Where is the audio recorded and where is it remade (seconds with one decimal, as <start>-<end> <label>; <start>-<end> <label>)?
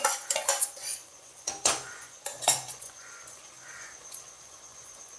0.0-5.2 remade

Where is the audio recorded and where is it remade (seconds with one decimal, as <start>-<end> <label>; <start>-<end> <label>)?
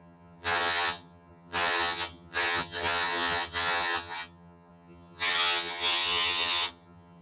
0.0-7.2 remade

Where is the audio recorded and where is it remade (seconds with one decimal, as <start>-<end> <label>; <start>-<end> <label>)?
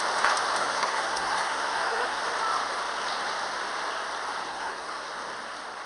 0.0-0.6 recorded; 0.6-2.2 remade; 2.2-4.5 recorded; 4.5-5.1 remade; 5.1-5.9 recorded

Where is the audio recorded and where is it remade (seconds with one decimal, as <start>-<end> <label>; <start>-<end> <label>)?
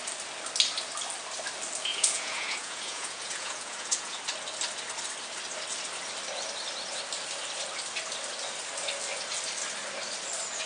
0.0-1.9 recorded; 1.9-4.2 remade; 4.2-10.7 recorded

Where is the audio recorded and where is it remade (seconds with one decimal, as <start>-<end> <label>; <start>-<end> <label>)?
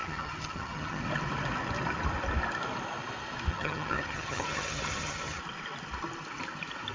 0.0-1.0 remade; 1.0-3.5 recorded; 3.5-5.4 remade; 5.4-6.9 recorded